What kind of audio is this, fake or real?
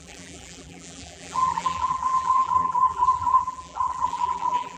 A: fake